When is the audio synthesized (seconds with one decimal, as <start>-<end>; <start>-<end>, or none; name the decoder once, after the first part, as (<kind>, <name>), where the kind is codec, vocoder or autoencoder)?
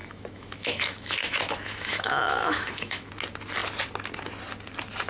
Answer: 0.0-3.1 (autoencoder, DAC-VAE)